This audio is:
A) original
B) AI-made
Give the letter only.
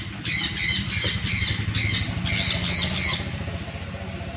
A